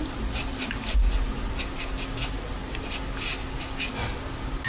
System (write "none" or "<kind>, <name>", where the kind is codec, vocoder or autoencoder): none